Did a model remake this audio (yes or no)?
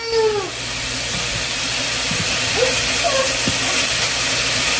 no